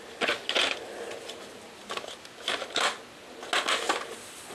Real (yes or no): yes